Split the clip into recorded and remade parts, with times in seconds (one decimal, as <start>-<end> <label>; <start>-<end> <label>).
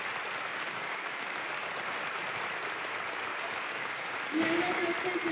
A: 0.0-0.5 recorded; 0.5-1.8 remade; 1.8-3.3 recorded; 3.3-4.8 remade; 4.8-5.3 recorded